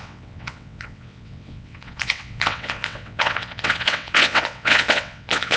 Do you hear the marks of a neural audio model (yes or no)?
yes